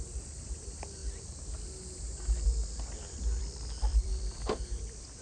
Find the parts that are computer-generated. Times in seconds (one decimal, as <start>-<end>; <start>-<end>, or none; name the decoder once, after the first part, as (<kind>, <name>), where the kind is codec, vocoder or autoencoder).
3.9-4.7 (vocoder, BigVGAN v2)